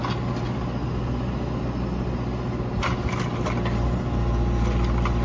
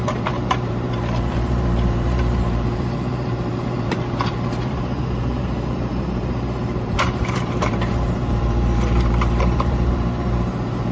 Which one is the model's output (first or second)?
second